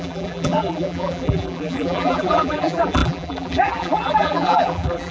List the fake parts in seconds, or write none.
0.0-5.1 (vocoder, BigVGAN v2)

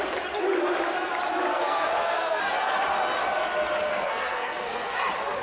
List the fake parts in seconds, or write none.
1.5-2.4 (codec, SNAC); 3.9-5.0

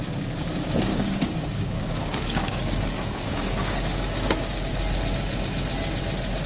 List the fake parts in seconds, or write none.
0.9-4.7 (codec, DAC)

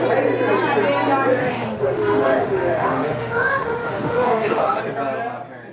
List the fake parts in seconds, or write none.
1.4-4.8 (autoencoder, DAC-VAE)

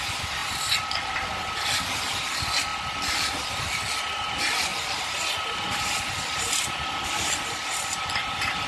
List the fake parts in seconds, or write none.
none

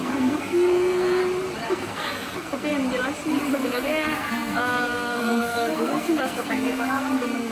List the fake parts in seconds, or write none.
0.0-1.2 (codec, SNAC); 1.7-2.7; 3.5-7.5

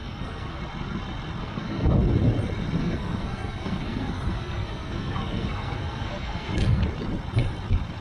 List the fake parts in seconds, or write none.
0.0-0.6 (codec, SNAC); 1.4-1.9; 2.8-6.8